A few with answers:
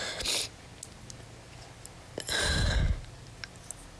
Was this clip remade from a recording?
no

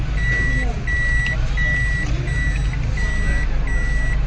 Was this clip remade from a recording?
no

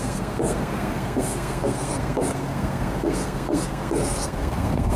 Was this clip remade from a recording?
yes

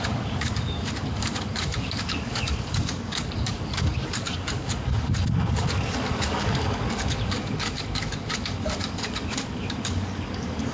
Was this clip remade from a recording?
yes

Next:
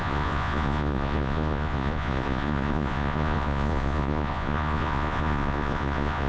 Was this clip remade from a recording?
yes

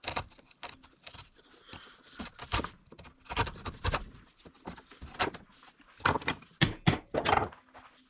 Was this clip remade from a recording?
no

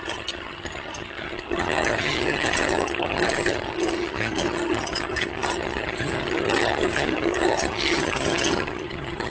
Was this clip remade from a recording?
yes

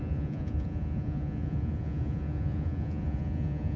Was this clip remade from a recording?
yes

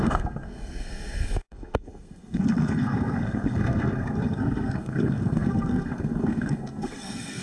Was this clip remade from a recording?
yes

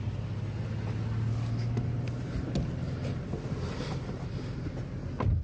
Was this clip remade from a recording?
no